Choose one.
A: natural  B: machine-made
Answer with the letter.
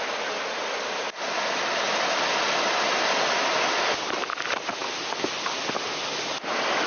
A